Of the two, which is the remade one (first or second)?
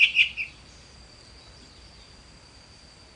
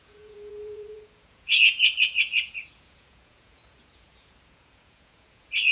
second